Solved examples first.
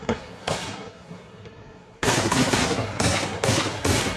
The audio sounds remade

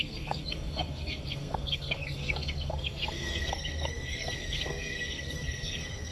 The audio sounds remade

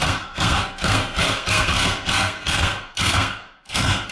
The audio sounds remade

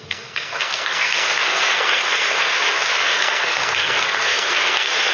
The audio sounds remade